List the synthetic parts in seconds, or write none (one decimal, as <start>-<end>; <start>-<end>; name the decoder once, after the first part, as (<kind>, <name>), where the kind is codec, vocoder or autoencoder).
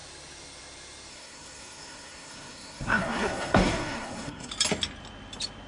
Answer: 1.1-4.5 (codec, SNAC)